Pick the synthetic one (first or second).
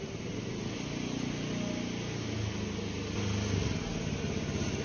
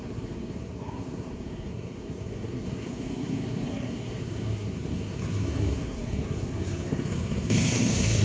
second